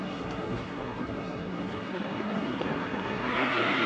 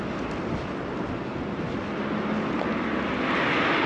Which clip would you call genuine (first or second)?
second